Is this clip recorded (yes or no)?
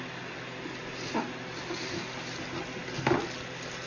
yes